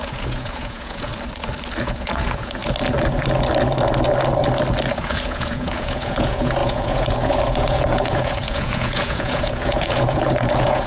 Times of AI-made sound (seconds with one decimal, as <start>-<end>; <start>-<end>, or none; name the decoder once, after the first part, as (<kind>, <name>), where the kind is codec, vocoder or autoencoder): 0.0-1.1 (vocoder, Vocos); 1.8-2.6; 4.9-10.9